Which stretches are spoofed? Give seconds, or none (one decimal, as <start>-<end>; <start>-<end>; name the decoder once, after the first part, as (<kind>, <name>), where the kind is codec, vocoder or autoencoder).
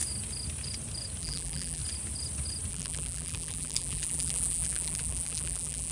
1.2-1.8 (vocoder, BigVGAN v2); 2.7-5.9